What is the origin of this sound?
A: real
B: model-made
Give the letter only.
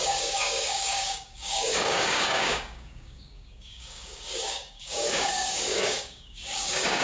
B